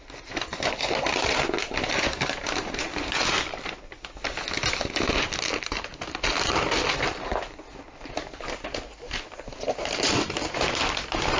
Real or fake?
real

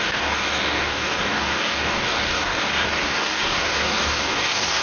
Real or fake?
fake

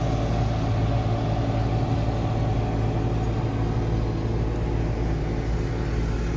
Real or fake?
real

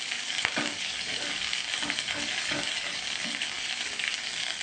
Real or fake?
fake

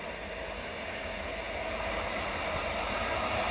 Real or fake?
real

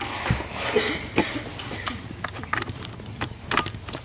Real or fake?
real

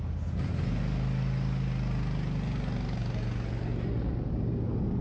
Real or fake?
real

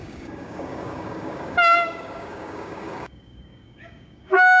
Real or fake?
fake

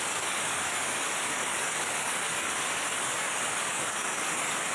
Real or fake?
fake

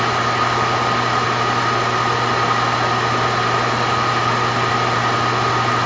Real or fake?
real